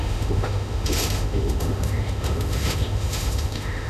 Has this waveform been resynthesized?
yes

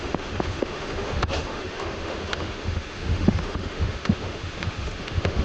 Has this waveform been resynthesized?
yes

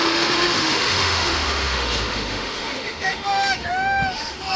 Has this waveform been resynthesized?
yes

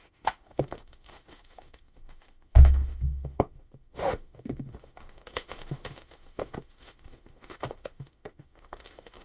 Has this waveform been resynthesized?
yes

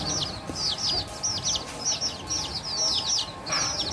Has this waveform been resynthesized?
no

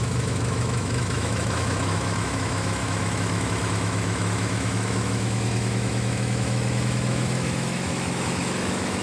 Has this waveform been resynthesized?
yes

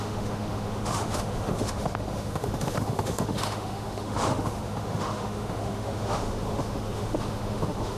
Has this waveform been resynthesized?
yes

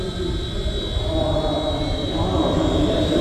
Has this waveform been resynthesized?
no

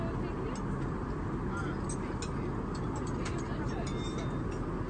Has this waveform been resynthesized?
no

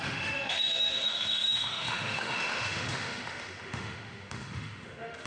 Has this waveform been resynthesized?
yes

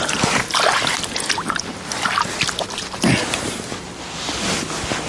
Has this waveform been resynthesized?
no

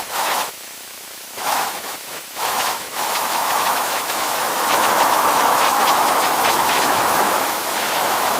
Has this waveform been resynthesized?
yes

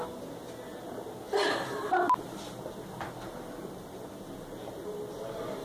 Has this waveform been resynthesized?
no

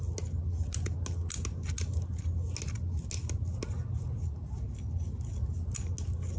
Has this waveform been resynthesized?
no